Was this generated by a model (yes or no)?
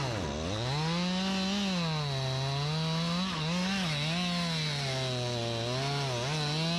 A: no